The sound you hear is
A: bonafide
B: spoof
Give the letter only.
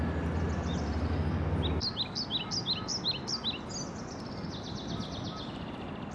A